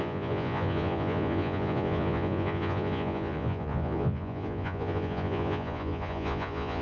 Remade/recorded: remade